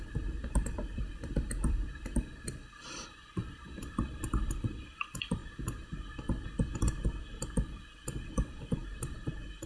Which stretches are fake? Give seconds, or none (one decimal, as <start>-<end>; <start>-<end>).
0.0-5.4; 7.2-8.8